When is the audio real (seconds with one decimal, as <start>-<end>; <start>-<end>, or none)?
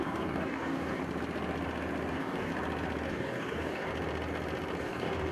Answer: 1.0-2.1; 2.5-3.1; 3.9-4.8